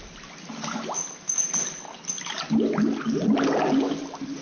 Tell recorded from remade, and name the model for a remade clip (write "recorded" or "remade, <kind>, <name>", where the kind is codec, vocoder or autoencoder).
recorded